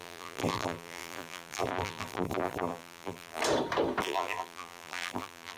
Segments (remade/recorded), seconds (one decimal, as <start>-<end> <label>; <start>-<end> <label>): 0.0-3.4 remade; 3.4-4.0 recorded; 4.0-5.6 remade